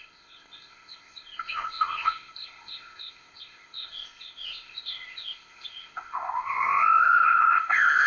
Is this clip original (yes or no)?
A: no